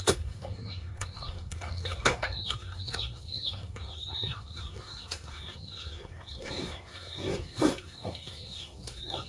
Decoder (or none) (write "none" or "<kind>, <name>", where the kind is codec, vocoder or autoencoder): codec, SNAC